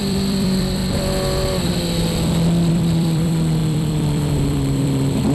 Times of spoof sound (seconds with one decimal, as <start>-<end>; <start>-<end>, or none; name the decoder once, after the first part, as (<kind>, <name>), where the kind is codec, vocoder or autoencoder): 0.0-0.8 (vocoder, BigVGAN v2); 2.7-5.3

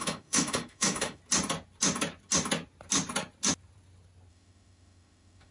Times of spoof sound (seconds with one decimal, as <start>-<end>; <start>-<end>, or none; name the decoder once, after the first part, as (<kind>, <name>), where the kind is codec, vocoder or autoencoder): 0.0-1.2 (autoencoder, DAC-VAE); 4.3-5.5

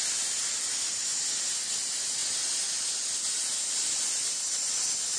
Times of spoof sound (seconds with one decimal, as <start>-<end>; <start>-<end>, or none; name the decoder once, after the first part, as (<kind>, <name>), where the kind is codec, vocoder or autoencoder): none